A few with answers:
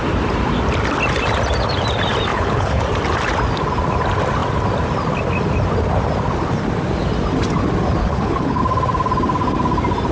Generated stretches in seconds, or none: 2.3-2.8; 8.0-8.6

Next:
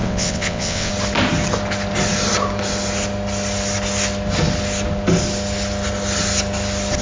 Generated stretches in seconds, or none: 0.0-0.9

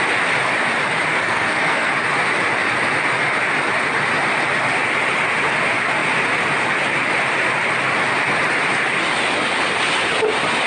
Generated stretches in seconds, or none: 1.1-1.9

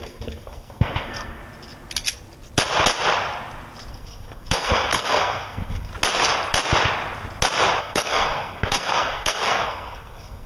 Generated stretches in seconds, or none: 0.0-1.4; 3.9-5.9; 7.8-10.5

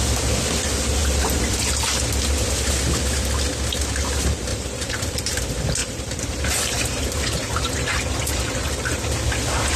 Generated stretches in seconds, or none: 1.0-1.6; 4.5-5.2; 5.8-7.9

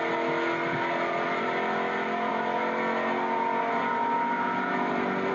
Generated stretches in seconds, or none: none

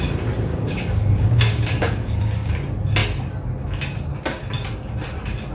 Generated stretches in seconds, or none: 0.5-2.5

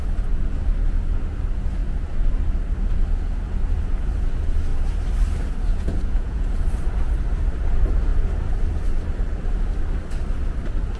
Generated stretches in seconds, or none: 5.7-6.6